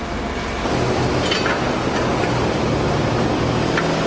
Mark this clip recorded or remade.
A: recorded